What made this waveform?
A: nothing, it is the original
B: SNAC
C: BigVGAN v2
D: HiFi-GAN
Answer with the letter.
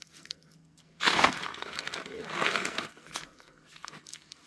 B